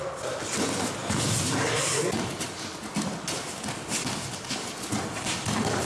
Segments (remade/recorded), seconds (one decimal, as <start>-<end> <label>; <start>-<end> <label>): 0.0-5.9 recorded